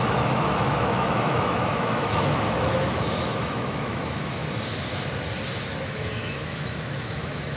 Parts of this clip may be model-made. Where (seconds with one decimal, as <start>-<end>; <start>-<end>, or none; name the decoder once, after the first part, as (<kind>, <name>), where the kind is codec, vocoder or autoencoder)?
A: 0.0-4.4 (autoencoder, DAC-VAE); 5.8-7.6